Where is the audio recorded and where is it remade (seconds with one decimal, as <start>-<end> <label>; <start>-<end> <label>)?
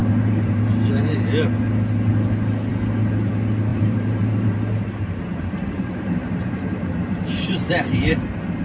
0.0-0.6 remade; 0.6-3.7 recorded; 3.7-8.6 remade